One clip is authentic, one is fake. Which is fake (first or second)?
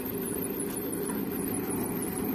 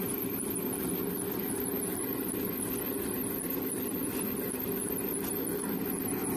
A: first